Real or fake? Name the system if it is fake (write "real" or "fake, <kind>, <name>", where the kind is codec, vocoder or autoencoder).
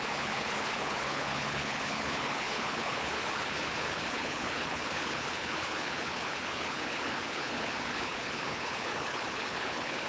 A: fake, codec, HILCodec